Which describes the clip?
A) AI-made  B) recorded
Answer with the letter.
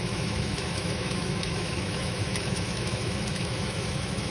A